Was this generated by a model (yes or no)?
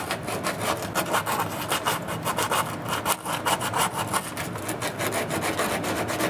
no